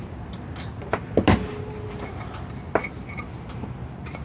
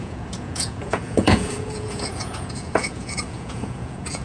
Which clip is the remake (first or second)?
second